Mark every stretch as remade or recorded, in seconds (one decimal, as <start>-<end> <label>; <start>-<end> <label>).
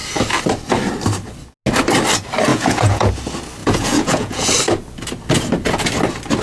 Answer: 0.0-2.5 recorded; 2.5-3.1 remade; 3.1-3.6 recorded; 3.6-4.5 remade; 4.5-6.4 recorded